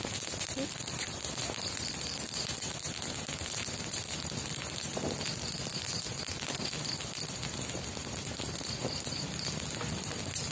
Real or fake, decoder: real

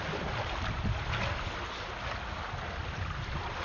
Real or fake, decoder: real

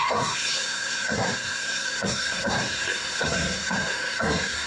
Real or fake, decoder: fake, codec, SNAC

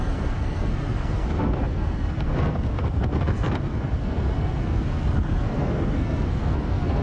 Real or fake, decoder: fake, codec, SNAC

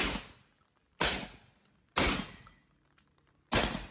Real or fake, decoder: real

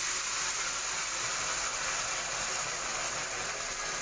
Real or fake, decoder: real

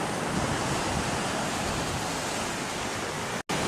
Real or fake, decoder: real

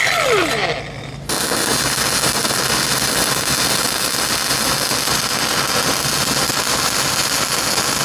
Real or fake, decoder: real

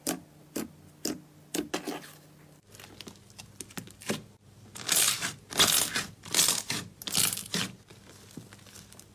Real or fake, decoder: real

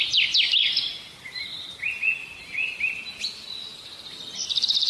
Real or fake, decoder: real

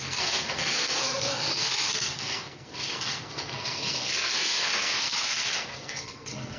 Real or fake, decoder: fake, codec, SNAC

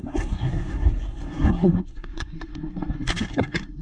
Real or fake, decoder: fake, codec, SNAC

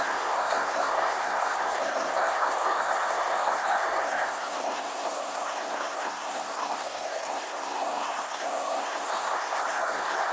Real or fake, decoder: fake, codec, SNAC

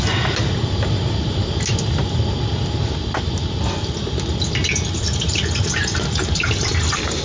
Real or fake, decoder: real